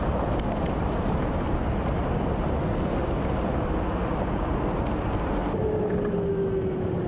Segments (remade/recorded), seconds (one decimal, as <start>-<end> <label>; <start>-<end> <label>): 0.0-7.1 recorded